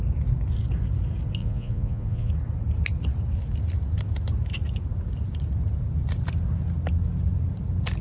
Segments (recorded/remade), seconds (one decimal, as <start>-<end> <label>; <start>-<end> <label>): 0.0-1.4 recorded; 1.4-2.3 remade; 2.3-8.0 recorded